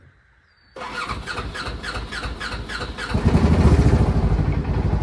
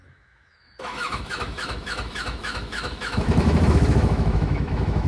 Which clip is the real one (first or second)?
first